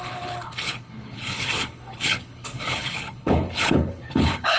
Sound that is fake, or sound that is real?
fake